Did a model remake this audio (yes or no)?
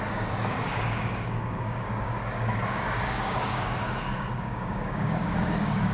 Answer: yes